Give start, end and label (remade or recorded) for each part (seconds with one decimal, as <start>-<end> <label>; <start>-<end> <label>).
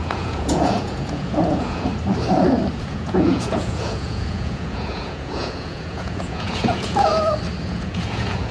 0.0-1.9 remade; 1.9-2.8 recorded; 2.8-7.1 remade; 7.1-7.6 recorded; 7.6-8.5 remade